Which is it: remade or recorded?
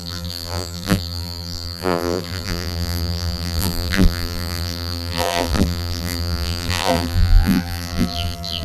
remade